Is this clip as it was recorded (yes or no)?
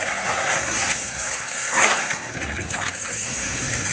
no